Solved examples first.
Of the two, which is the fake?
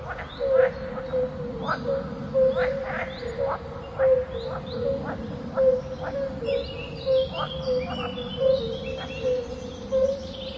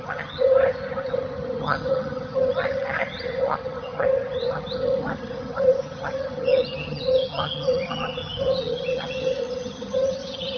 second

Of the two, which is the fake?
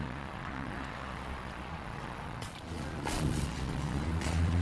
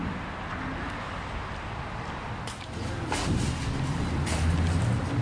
first